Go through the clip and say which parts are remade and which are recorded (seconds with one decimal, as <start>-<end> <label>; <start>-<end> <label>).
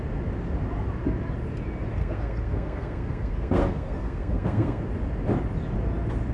0.0-2.0 recorded; 2.0-4.8 remade; 4.8-6.3 recorded